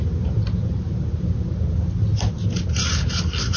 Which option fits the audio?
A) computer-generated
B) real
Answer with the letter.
B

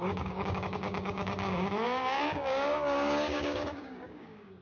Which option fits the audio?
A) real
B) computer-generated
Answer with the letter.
B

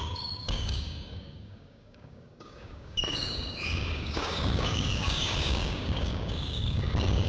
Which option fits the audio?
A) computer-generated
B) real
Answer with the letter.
A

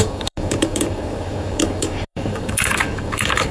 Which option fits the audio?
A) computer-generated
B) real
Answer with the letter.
A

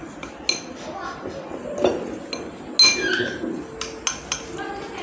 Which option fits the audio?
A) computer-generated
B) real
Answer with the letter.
B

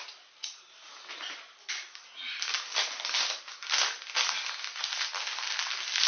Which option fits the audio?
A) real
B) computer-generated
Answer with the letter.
A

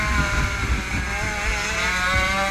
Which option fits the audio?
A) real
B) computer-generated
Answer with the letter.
A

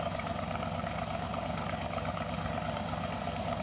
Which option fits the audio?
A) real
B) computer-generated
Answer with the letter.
B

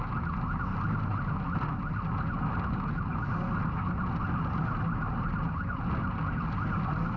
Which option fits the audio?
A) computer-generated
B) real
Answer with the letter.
B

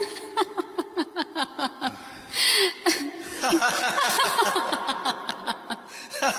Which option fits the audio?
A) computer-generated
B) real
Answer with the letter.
A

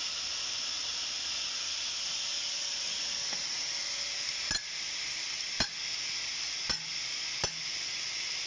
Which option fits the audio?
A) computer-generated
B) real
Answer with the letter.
B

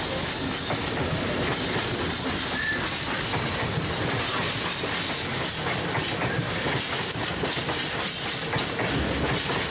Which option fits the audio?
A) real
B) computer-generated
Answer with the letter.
A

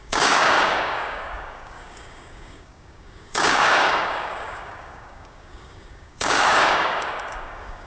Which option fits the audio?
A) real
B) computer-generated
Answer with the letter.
B